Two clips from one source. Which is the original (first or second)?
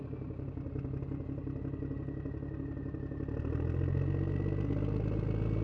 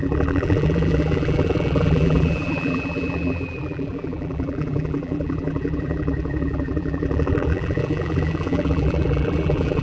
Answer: first